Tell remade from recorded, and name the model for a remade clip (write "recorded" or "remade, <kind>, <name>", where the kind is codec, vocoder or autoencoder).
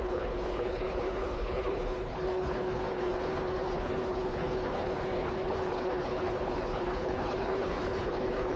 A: remade, codec, HILCodec